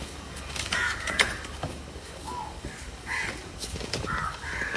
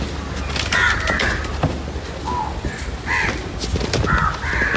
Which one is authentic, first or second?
second